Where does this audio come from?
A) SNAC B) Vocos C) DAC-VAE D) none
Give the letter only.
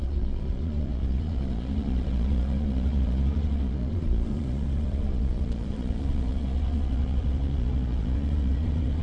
B